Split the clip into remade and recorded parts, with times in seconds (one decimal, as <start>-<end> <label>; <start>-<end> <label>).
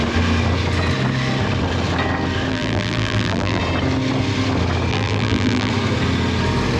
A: 0.0-2.5 recorded; 2.5-3.6 remade; 3.6-4.9 recorded; 4.9-5.7 remade; 5.7-6.8 recorded